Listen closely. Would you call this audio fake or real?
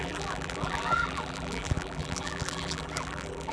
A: fake